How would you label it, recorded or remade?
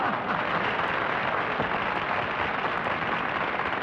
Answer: recorded